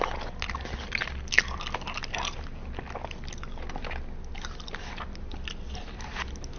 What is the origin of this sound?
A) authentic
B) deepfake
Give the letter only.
A